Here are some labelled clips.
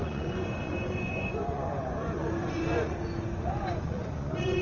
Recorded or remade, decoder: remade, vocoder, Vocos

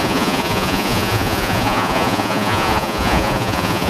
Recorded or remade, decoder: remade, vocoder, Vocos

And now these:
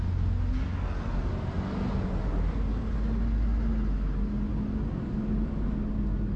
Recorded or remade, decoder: recorded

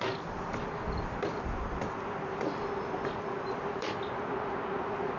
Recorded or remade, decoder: recorded